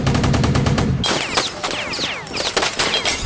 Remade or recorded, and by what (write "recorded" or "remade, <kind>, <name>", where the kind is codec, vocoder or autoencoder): recorded